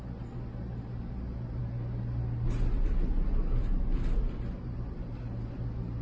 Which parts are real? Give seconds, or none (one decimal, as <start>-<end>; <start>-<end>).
0.0-6.0